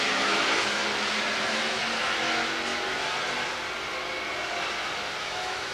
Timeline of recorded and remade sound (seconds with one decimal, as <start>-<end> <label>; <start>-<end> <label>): 0.0-0.8 remade; 0.8-1.4 recorded; 1.4-1.8 remade; 1.8-5.2 recorded; 5.2-5.7 remade